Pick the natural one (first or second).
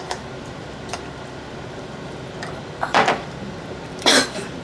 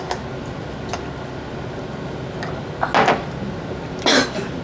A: second